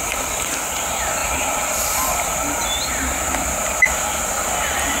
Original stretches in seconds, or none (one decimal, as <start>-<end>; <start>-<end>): 0.0-5.0

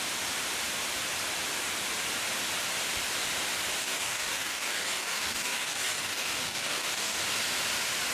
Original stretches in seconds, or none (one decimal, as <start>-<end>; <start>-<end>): 0.0-3.8; 7.2-8.1

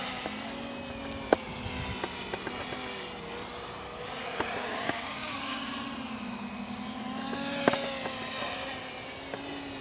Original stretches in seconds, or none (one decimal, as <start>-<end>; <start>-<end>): 0.0-4.7; 5.7-9.8